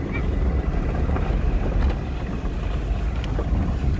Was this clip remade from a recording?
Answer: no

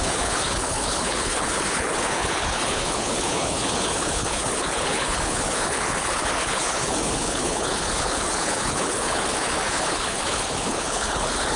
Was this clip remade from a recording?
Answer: yes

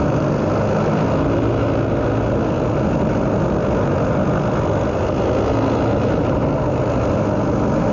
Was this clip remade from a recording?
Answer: no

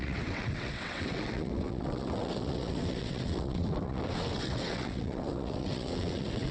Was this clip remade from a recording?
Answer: yes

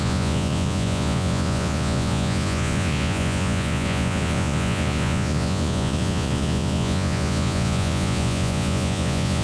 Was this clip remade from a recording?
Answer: yes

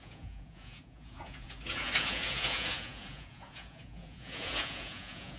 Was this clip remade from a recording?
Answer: yes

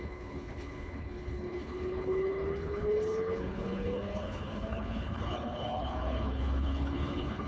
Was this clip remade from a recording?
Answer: yes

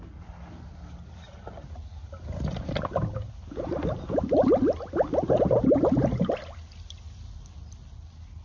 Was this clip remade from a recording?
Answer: no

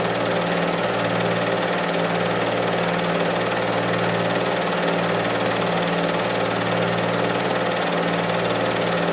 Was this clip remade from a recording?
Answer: no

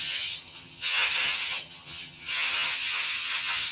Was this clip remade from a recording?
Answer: yes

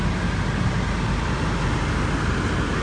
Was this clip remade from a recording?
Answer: no